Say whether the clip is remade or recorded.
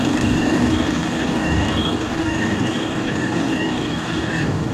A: remade